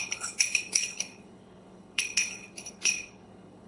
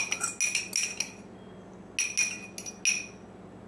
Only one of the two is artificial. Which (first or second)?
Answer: first